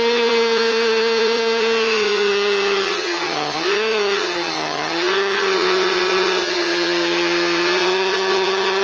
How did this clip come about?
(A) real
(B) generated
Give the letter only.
B